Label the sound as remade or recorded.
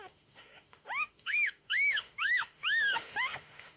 remade